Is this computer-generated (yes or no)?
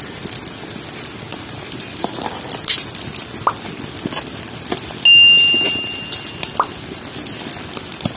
no